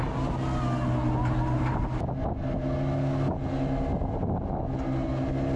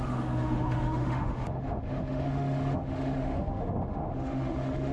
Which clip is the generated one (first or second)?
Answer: second